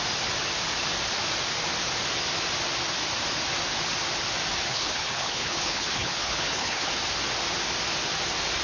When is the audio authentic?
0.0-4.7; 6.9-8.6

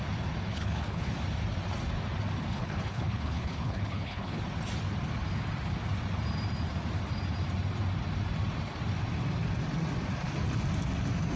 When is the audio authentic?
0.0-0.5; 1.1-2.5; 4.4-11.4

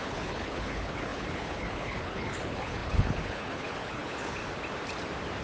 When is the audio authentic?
4.4-5.4

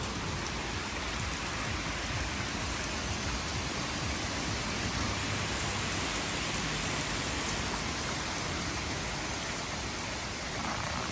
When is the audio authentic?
0.0-11.1

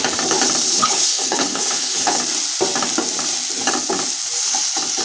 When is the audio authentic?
0.0-0.7; 2.2-5.0

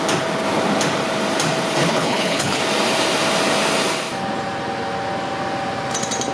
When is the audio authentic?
0.0-1.8; 2.6-6.3